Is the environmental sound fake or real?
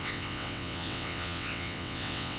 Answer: fake